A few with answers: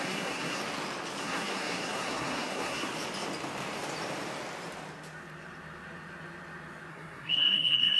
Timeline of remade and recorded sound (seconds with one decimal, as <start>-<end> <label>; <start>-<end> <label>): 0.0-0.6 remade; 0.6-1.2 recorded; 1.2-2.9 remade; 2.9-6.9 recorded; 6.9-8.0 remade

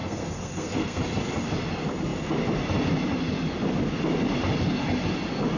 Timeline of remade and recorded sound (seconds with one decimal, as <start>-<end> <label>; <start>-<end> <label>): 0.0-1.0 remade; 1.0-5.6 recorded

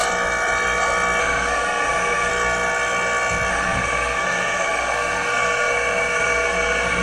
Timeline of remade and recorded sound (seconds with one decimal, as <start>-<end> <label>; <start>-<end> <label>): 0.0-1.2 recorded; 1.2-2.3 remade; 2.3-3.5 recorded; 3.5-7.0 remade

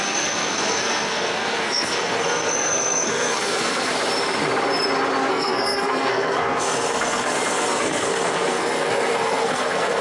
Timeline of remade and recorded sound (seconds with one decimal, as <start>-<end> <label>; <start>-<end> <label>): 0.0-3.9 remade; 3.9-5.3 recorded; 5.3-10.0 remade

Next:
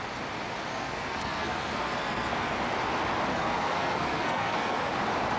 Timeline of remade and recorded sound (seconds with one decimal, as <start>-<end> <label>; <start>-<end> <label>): 0.0-0.7 recorded; 0.7-2.6 remade; 2.6-3.3 recorded; 3.3-4.9 remade; 4.9-5.4 recorded

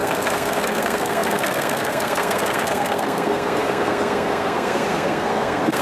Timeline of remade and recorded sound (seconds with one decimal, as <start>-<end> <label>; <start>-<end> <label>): 0.0-5.8 remade